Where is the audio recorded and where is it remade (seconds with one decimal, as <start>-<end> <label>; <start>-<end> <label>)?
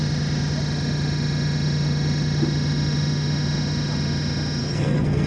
0.0-4.6 recorded; 4.6-5.3 remade